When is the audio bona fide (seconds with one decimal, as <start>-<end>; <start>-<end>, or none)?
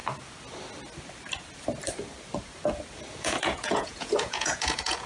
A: 0.0-3.1